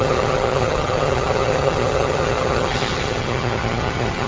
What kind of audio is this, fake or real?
fake